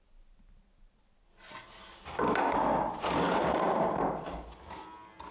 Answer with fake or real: real